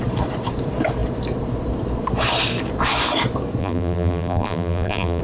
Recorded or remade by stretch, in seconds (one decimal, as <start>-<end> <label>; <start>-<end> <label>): 0.0-3.6 recorded; 3.6-5.2 remade